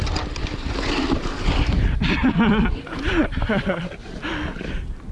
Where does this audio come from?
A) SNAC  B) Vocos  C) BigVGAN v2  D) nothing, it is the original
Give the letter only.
D